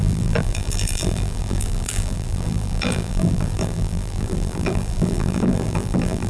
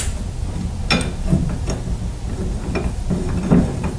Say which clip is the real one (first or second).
second